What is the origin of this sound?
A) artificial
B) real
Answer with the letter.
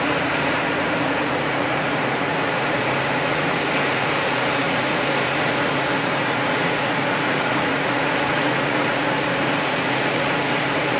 A